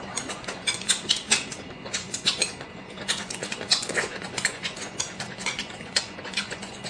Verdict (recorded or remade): remade